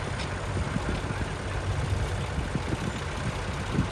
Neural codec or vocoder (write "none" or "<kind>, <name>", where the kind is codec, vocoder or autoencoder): none